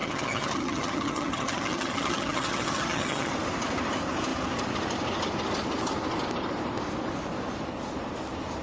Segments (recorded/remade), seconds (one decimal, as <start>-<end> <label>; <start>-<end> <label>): 0.0-3.3 remade; 3.3-8.6 recorded